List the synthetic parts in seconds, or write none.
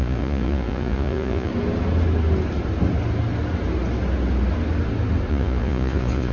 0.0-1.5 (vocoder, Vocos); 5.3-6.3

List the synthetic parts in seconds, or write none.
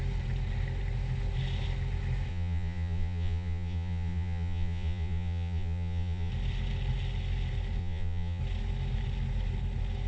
2.3-6.3 (vocoder, Vocos); 7.8-8.4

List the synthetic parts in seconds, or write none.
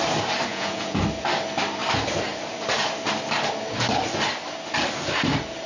0.5-1.0 (vocoder, Vocos)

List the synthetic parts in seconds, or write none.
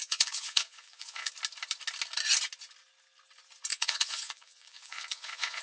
0.0-1.3 (vocoder, Vocos); 3.7-5.6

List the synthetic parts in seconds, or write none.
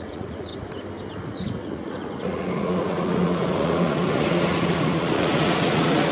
0.0-0.5 (vocoder, Vocos); 1.1-6.1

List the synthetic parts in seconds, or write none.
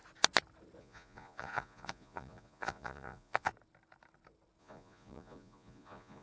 0.8-3.5 (vocoder, Vocos); 4.6-6.2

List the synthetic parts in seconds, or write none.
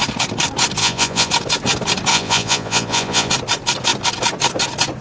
0.8-1.3 (vocoder, Vocos); 2.1-3.3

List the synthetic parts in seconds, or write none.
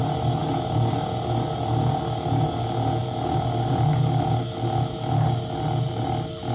none